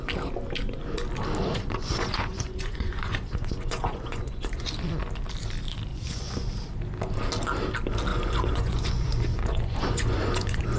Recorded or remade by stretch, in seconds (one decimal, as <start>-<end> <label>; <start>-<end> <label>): 0.0-1.5 recorded; 1.5-4.7 remade; 4.7-5.9 recorded; 5.9-6.5 remade; 6.5-8.1 recorded; 8.1-10.8 remade